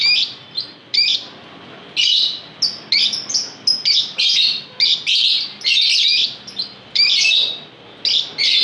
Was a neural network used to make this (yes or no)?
no